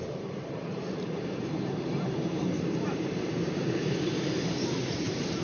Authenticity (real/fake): fake